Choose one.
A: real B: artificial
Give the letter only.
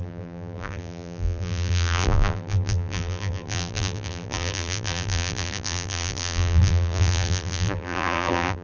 B